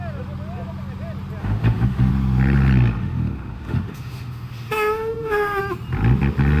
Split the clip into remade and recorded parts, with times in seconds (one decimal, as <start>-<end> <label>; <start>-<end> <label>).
0.0-1.4 recorded; 1.4-2.1 remade; 2.1-3.0 recorded; 3.0-5.6 remade; 5.6-6.6 recorded